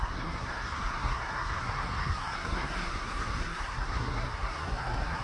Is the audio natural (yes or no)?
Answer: no